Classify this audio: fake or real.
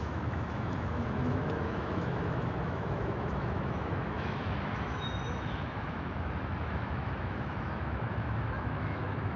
fake